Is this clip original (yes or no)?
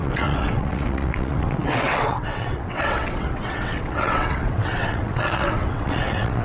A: no